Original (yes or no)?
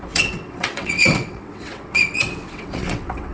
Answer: no